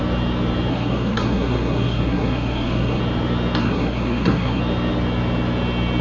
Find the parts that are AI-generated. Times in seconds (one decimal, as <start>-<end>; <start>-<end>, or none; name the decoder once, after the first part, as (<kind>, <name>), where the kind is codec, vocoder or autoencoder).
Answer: 0.7-3.0 (codec, SNAC); 3.6-4.6